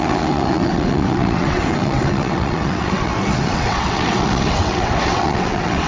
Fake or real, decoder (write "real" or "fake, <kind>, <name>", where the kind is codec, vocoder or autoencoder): fake, vocoder, WaveNeXt